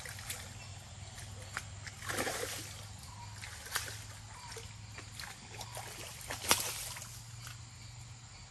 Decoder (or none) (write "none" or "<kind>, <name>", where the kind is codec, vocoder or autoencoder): none